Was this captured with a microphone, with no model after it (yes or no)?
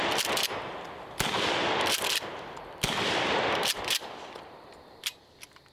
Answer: yes